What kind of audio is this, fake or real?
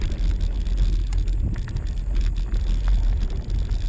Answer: real